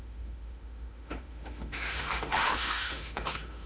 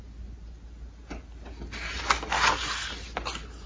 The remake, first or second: first